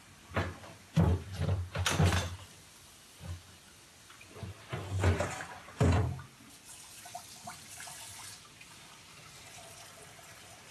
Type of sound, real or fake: real